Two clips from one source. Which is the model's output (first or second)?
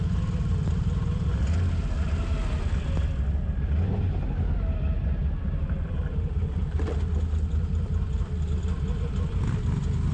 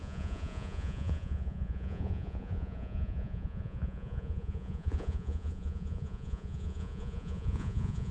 second